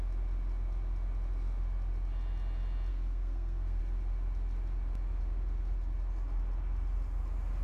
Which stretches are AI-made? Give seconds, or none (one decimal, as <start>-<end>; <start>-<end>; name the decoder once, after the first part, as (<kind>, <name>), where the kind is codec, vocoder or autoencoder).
2.9-3.8 (codec, SNAC)